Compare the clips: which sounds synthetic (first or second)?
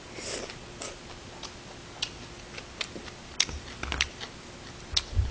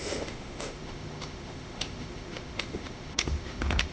second